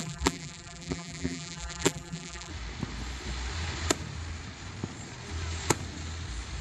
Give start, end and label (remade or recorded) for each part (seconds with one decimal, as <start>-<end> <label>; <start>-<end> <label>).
0.0-2.5 remade; 2.5-6.6 recorded